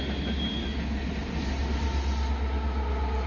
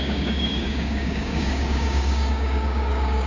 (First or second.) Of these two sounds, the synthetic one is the second